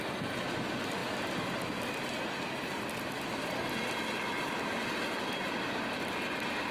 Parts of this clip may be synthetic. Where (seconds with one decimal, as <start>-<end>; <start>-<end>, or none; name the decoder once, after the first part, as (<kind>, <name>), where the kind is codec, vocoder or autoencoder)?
none